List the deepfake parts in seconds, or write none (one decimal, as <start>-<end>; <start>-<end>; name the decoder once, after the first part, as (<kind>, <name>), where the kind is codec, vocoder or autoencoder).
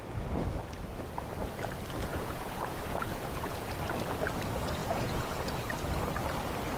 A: 2.1-3.7 (vocoder, Vocos); 4.8-5.6